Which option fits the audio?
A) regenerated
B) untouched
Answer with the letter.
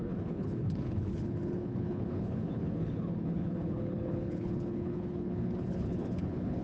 A